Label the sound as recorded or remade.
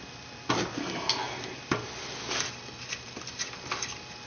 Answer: recorded